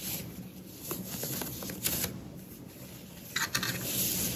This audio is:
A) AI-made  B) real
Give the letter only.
B